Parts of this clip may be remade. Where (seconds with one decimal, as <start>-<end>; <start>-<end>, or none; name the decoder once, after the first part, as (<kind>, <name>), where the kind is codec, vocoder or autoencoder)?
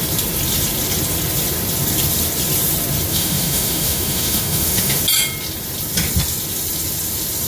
3.1-5.0 (autoencoder, DAC-VAE)